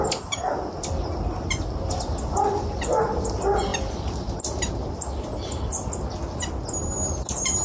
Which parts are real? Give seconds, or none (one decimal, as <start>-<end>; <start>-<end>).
0.0-7.6